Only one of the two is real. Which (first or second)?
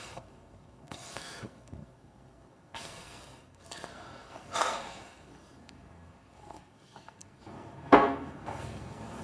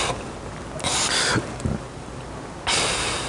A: second